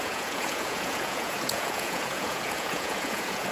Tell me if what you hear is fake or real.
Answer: fake